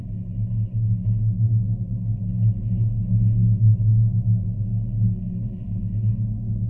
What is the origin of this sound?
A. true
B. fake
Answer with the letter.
A